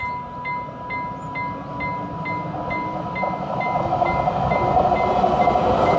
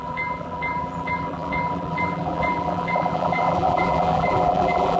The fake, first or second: second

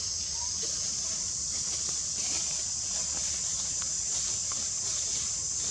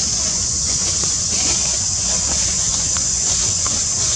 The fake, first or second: second